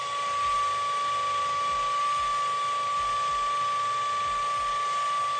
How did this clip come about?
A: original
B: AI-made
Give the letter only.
A